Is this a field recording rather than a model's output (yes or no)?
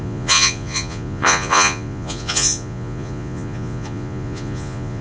no